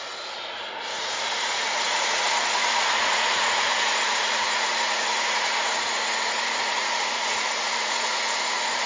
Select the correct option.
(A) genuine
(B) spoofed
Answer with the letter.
B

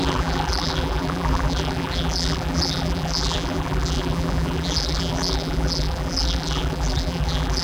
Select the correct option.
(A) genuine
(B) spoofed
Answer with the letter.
B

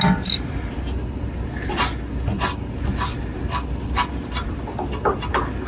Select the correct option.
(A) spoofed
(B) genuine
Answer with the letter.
B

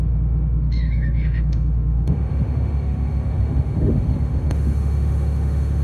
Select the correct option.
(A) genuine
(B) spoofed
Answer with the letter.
B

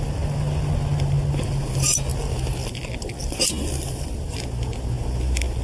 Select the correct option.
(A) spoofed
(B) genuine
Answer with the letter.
B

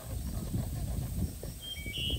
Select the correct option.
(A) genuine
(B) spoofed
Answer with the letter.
A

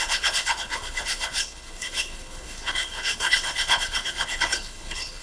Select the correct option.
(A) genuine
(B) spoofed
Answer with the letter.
B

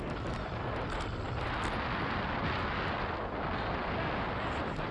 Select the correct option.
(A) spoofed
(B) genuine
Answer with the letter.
B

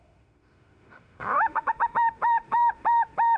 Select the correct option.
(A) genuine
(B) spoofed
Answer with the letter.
B